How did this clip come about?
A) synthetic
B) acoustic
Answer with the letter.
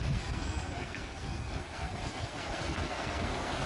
A